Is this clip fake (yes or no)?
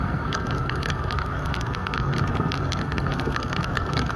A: yes